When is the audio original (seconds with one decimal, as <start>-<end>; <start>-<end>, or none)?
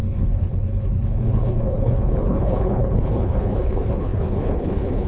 none